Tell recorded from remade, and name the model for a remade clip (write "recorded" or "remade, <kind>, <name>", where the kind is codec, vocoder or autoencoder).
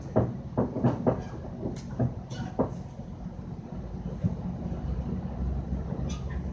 recorded